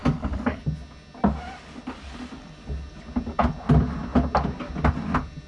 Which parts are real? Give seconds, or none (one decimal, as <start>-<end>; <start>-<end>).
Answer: 0.6-5.5